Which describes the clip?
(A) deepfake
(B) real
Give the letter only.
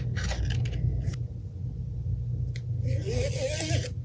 B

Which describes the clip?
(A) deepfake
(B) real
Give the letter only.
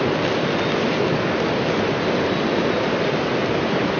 B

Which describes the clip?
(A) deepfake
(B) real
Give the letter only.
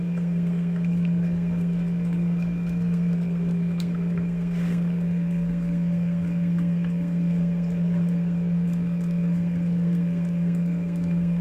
A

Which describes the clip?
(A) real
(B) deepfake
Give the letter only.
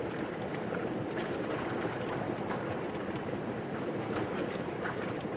B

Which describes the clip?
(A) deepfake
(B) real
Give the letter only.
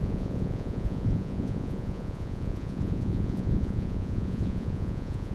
A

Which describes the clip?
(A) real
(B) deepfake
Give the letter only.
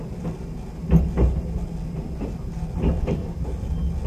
A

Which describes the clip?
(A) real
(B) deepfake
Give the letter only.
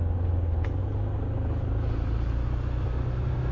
A